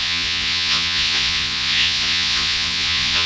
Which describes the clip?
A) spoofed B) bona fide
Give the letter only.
A